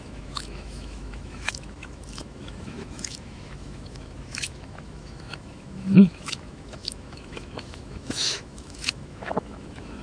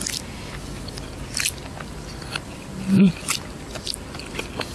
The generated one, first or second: first